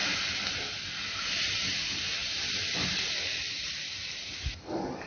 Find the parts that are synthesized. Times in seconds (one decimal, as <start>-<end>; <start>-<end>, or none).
none